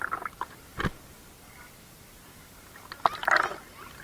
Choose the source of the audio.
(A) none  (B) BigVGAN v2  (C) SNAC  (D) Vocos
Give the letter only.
A